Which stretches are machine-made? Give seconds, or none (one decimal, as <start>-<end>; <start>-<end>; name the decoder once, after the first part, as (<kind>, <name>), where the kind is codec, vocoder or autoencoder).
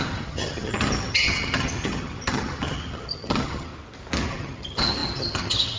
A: 0.0-3.7 (vocoder, HiFi-GAN); 4.3-5.8